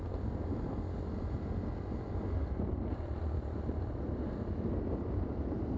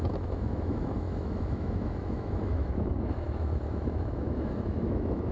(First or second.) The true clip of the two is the first